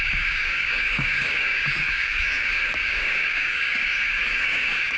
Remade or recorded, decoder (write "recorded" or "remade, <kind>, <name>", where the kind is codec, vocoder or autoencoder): remade, codec, DAC